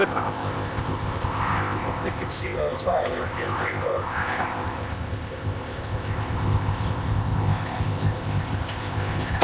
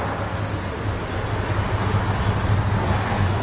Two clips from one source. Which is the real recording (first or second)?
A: second